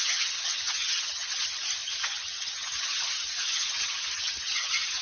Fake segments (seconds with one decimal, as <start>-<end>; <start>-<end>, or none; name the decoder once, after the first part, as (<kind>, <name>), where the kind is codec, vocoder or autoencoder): 0.0-5.0 (vocoder, HiFi-GAN)